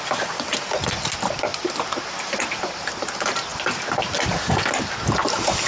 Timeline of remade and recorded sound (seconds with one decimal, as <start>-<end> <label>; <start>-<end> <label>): 0.0-1.5 recorded; 1.5-2.9 remade; 2.9-5.7 recorded